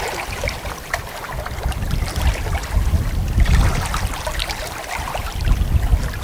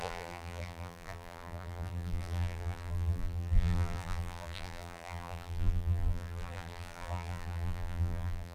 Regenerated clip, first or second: second